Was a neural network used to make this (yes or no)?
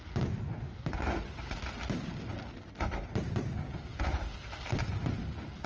no